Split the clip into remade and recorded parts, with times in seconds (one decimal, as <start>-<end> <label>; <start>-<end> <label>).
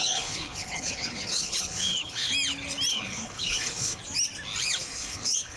0.0-2.3 remade; 2.3-2.9 recorded; 2.9-4.0 remade; 4.0-4.6 recorded; 4.6-5.6 remade